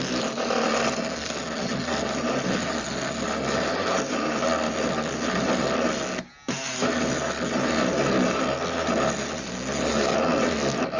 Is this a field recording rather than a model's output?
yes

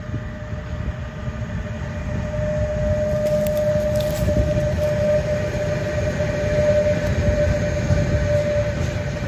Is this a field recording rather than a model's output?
yes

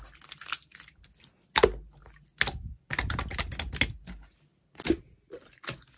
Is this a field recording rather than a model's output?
yes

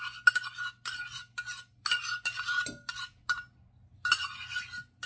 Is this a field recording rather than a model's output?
yes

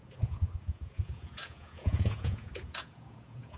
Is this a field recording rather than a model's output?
no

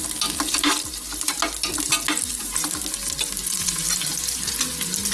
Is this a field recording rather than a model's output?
yes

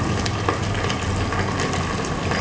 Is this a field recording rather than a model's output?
yes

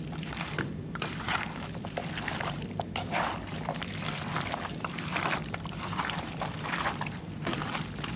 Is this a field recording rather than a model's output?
no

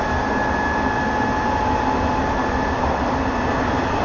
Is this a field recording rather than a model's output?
yes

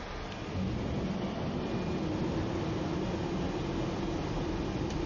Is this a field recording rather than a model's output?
yes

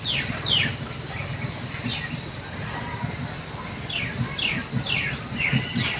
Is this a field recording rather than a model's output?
yes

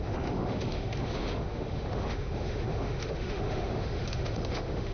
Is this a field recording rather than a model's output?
no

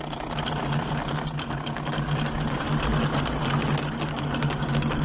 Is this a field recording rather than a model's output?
yes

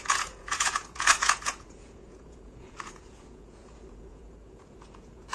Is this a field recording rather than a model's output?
no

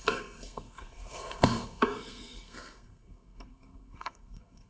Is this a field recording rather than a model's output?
no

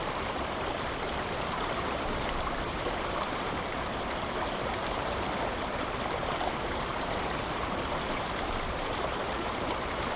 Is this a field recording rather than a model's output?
no